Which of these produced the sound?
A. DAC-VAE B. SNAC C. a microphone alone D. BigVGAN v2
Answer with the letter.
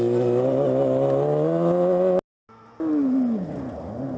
C